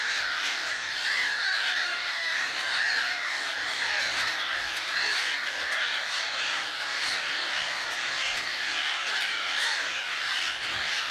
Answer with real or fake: fake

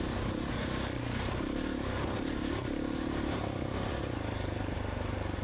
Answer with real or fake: real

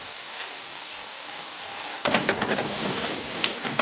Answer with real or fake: fake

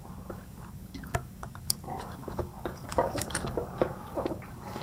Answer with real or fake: fake